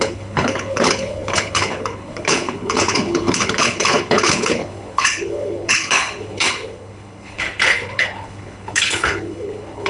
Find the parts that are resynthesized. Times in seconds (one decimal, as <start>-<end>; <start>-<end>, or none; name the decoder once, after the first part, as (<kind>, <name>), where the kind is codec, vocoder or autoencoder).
0.0-9.9 (codec, HILCodec)